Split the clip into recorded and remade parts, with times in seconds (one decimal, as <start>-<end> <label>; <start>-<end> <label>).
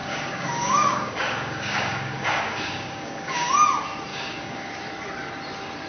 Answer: 0.0-3.5 remade; 3.5-4.1 recorded; 4.1-4.7 remade; 4.7-5.9 recorded